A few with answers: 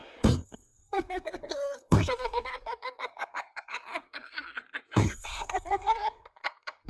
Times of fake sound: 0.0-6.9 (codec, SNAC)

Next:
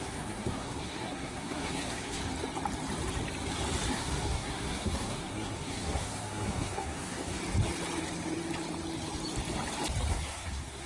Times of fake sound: 0.0-2.2 (codec, SNAC); 3.9-7.4; 10.1-10.9

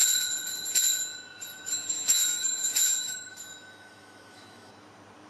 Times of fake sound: 1.5-4.7 (autoencoder, DAC-VAE)

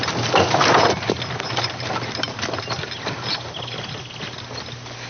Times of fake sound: none

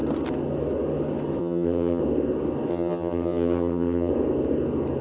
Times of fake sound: 1.4-2.0 (vocoder, HiFi-GAN); 2.7-4.1

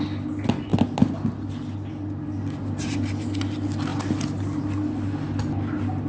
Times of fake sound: none